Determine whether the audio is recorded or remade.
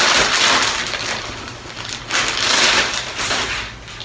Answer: recorded